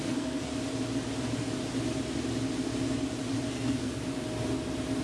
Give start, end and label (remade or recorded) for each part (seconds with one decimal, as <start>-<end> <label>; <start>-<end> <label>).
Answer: 0.0-0.5 remade; 0.5-3.5 recorded; 3.5-4.0 remade; 4.0-5.0 recorded